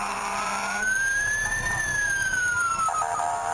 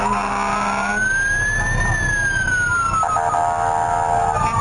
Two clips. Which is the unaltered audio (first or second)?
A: second